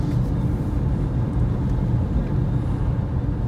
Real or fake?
real